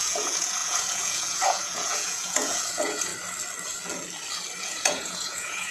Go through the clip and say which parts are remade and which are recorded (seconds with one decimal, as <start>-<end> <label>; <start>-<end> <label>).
0.0-3.1 remade; 3.1-4.6 recorded; 4.6-5.7 remade